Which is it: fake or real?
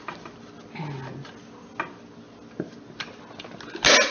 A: real